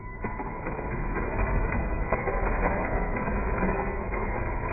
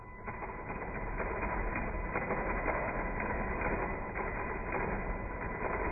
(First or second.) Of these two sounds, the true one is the second